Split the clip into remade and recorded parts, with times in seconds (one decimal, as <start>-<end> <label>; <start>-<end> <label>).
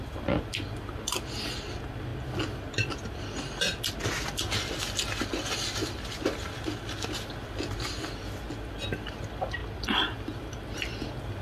0.0-11.4 recorded